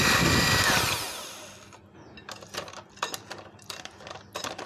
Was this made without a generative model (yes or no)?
yes